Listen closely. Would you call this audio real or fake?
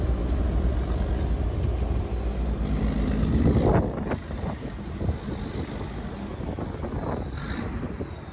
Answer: real